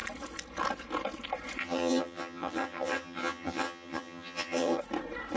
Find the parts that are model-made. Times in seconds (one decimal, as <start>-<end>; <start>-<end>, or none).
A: 1.6-4.8

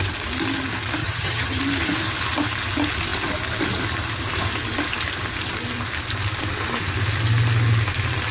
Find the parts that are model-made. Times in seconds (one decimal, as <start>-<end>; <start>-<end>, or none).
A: 1.0-1.6